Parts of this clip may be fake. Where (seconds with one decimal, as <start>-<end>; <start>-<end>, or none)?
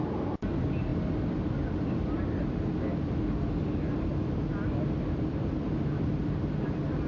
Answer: none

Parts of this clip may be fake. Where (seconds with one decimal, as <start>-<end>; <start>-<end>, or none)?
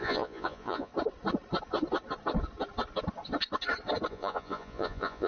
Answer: 0.0-0.9; 4.1-5.3